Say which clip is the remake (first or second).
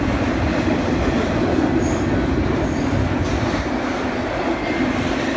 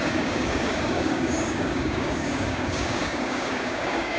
second